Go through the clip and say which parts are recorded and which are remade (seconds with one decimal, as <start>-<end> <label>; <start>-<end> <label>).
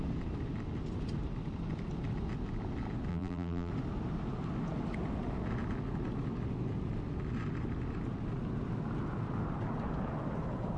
0.0-3.1 recorded; 3.1-3.7 remade; 3.7-10.8 recorded